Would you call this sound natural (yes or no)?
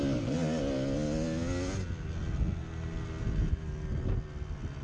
yes